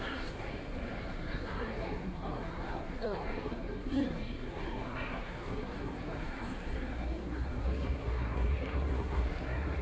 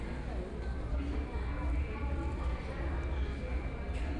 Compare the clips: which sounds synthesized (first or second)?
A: first